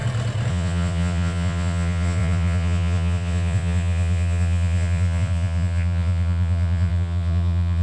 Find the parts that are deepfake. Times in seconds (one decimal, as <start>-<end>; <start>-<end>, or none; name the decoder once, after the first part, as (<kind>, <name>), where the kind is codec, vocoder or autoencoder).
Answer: 0.5-7.8 (vocoder, Vocos)